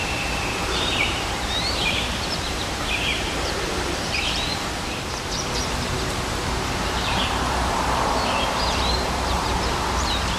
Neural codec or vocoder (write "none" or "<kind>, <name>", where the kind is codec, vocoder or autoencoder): vocoder, BigVGAN v2